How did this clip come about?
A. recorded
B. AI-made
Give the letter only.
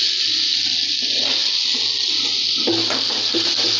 A